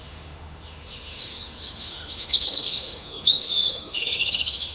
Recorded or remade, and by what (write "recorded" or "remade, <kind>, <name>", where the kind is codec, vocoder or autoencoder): remade, autoencoder, DAC-VAE